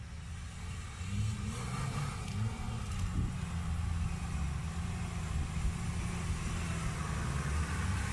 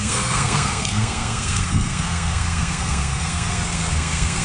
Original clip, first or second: first